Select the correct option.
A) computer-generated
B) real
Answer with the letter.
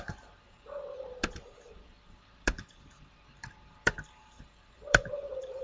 A